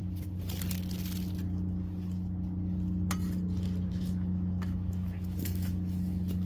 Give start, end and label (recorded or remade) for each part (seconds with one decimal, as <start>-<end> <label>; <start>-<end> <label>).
0.0-3.9 recorded; 3.9-6.5 remade